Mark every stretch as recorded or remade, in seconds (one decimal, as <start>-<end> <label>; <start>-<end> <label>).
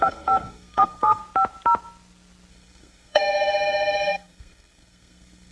0.0-1.2 remade; 1.2-2.5 recorded; 2.5-5.5 remade